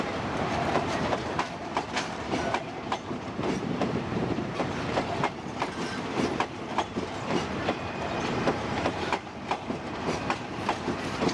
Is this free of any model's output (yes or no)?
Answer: no